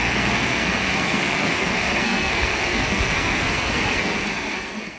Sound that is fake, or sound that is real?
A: fake